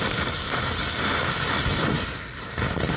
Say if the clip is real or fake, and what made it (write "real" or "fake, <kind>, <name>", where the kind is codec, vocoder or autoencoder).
real